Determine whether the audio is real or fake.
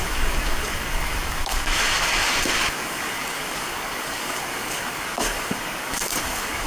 fake